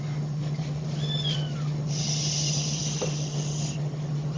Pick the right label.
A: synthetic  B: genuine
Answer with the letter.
B